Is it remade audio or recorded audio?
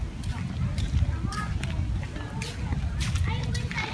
recorded